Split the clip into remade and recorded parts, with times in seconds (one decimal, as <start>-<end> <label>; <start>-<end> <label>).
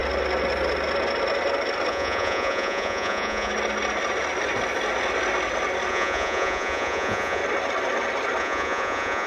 0.0-1.9 recorded; 1.9-3.5 remade; 3.5-5.9 recorded; 5.9-7.4 remade; 7.4-8.4 recorded; 8.4-9.3 remade